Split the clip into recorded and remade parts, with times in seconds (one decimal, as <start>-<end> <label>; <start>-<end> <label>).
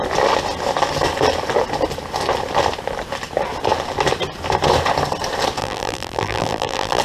0.0-5.6 recorded; 5.6-7.0 remade